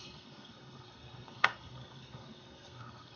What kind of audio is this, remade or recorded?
remade